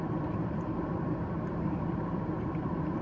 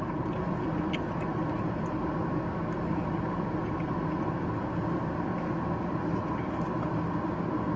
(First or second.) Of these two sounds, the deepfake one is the first